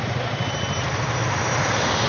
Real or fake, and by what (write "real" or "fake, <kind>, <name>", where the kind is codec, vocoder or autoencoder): real